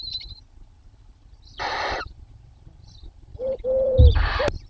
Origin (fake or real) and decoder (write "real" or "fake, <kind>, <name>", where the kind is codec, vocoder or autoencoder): fake, vocoder, BigVGAN v2